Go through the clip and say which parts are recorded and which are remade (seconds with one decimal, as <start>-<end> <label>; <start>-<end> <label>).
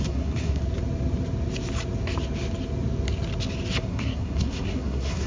0.0-0.6 remade; 0.6-3.8 recorded; 3.8-5.3 remade